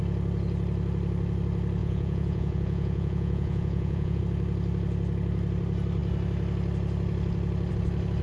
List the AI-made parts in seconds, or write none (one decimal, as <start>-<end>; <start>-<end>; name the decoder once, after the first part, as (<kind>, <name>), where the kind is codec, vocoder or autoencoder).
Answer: 1.8-4.2 (vocoder, Vocos)